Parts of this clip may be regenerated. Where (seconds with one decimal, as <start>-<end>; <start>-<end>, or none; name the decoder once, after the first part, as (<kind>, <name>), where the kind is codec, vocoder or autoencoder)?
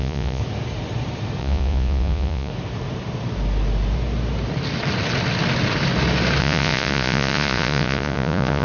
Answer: 0.0-0.4 (vocoder, Vocos); 1.4-2.5; 6.4-8.6